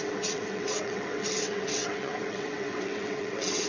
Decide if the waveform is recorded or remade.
remade